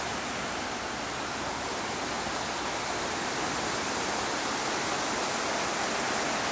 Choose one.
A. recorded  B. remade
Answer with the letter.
B